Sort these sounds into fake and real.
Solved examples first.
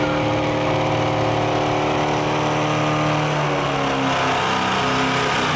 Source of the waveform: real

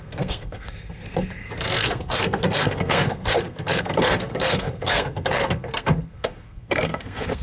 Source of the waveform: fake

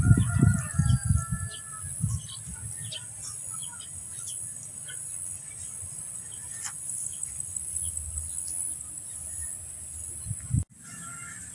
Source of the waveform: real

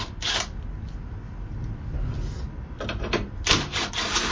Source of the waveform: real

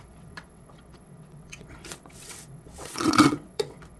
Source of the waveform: fake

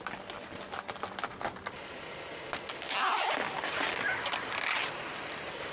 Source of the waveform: real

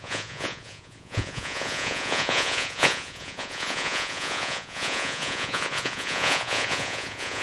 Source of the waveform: fake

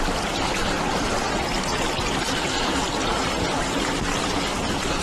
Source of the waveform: real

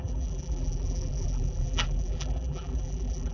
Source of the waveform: fake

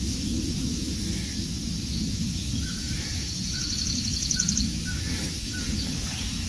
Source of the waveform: fake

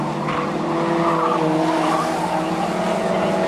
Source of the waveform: real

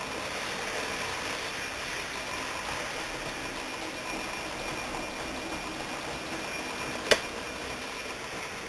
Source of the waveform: real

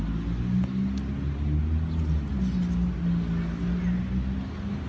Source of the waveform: real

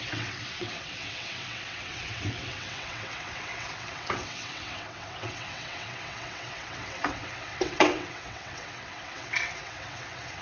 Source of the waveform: fake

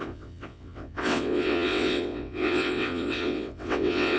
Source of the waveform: fake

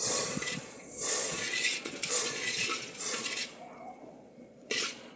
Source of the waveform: fake